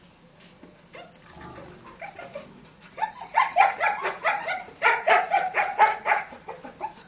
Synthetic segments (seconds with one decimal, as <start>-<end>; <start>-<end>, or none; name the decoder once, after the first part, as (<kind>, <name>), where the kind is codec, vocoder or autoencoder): 2.3-6.5 (vocoder, Vocos)